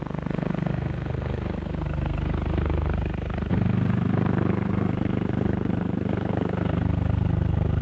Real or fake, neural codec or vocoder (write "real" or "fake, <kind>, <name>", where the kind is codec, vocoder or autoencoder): fake, codec, SNAC